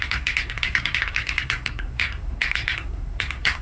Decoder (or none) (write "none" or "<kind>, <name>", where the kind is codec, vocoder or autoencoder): codec, SNAC